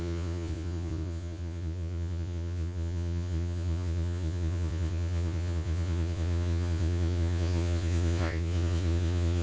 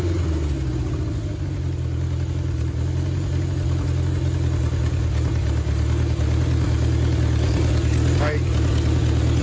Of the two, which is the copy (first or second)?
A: first